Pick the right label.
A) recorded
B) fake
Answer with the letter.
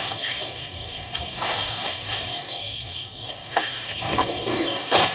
B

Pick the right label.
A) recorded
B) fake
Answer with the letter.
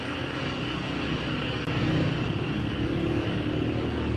B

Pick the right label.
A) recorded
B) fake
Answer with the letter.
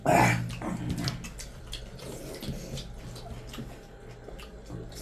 A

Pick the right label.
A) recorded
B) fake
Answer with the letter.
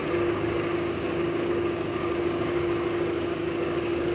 B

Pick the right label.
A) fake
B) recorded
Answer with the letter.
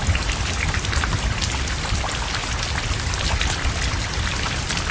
B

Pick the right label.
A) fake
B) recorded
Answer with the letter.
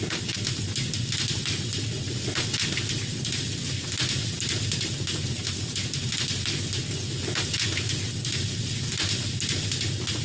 B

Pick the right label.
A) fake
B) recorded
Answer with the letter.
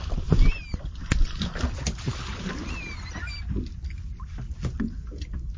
B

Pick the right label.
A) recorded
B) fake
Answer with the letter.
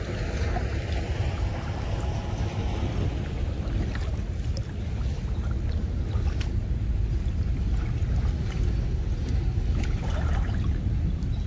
A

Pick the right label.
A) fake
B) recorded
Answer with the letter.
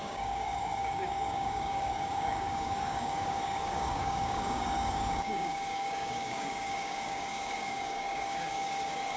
A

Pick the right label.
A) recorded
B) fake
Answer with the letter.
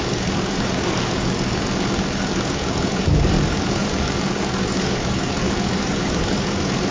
B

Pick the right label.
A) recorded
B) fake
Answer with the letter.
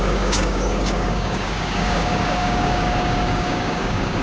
B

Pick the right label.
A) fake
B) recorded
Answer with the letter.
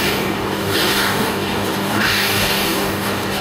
A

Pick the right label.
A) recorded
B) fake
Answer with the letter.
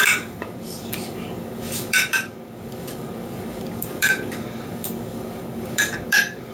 B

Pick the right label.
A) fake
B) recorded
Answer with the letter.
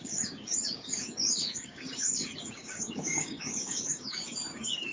A